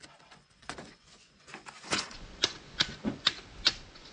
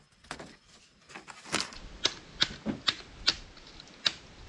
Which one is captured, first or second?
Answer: second